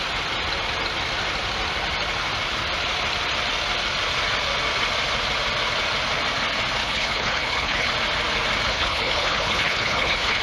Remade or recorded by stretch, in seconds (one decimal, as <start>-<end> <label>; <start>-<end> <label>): 0.0-6.8 recorded; 6.8-7.9 remade; 7.9-8.7 recorded; 8.7-10.4 remade